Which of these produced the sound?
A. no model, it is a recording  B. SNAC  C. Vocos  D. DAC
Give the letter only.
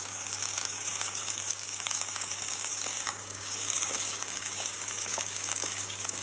D